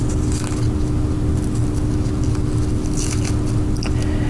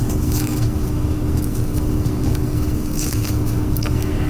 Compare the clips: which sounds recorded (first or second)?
first